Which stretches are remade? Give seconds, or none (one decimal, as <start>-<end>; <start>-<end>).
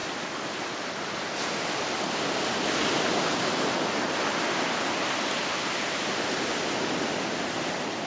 none